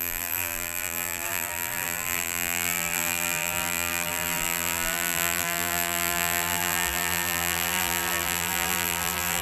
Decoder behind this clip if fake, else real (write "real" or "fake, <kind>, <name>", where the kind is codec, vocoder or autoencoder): fake, vocoder, BigVGAN v2